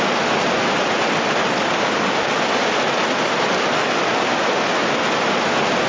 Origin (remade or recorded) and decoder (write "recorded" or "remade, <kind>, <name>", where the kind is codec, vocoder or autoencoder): recorded